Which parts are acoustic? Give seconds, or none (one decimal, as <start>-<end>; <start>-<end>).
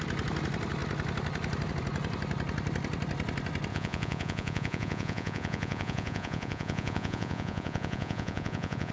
0.0-3.7